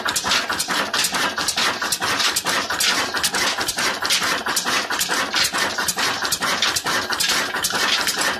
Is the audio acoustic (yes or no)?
yes